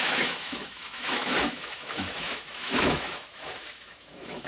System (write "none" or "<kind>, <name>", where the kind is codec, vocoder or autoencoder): autoencoder, DAC-VAE